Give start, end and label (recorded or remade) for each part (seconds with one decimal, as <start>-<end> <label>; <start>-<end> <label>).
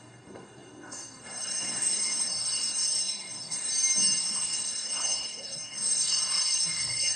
0.0-3.7 remade; 3.7-4.2 recorded; 4.2-7.2 remade